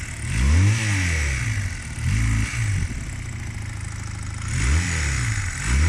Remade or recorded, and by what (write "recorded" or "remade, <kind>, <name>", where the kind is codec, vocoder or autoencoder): recorded